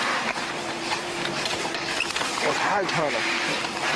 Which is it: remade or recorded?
remade